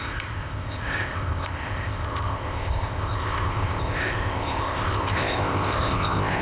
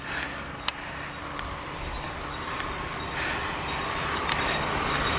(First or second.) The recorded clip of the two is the second